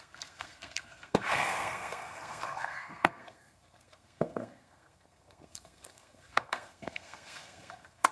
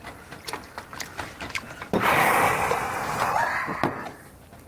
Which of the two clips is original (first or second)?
second